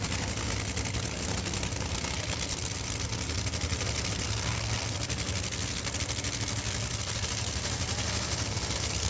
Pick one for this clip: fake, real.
real